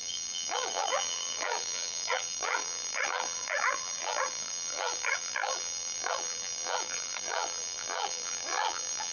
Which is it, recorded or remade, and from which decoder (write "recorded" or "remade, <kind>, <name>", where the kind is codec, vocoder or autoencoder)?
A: remade, vocoder, BigVGAN v2